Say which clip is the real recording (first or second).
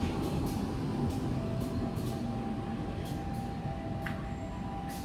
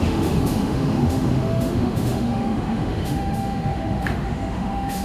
first